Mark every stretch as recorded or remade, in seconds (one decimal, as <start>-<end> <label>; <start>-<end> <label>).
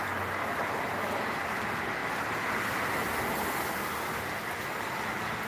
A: 0.0-5.5 recorded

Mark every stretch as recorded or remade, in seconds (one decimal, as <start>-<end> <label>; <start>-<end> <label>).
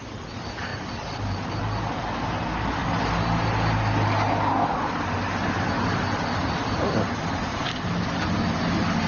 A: 0.0-0.7 recorded; 0.7-1.6 remade; 1.6-9.1 recorded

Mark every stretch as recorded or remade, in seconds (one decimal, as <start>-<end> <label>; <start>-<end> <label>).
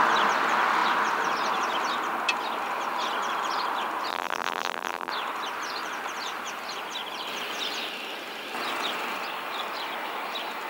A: 0.0-4.1 recorded; 4.1-5.1 remade; 5.1-10.7 recorded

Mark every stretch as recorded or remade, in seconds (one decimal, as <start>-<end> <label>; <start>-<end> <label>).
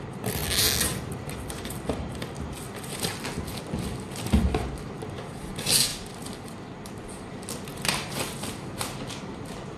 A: 0.0-7.7 recorded; 7.7-8.2 remade; 8.2-9.8 recorded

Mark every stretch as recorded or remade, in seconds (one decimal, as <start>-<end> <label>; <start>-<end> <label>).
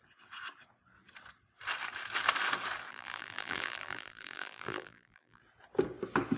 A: 0.0-2.9 recorded; 2.9-5.4 remade; 5.4-6.4 recorded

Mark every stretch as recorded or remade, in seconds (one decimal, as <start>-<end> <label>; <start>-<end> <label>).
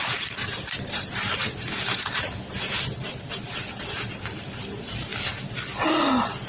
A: 0.0-5.1 remade; 5.1-6.5 recorded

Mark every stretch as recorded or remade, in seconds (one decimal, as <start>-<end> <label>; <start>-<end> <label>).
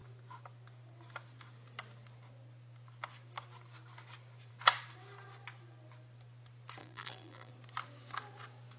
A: 0.0-6.8 recorded; 6.8-7.5 remade; 7.5-8.8 recorded